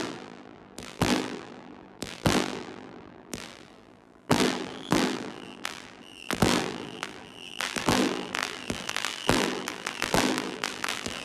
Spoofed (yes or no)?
yes